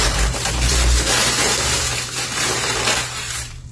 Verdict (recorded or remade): remade